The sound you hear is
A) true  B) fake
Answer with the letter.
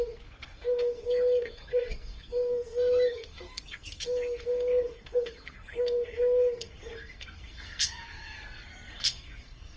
B